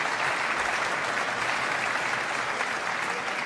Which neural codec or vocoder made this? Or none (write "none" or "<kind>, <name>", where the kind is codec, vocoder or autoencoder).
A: none